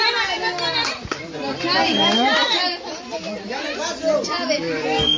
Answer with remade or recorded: recorded